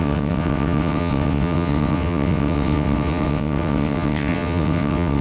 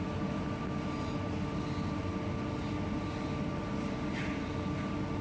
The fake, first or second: first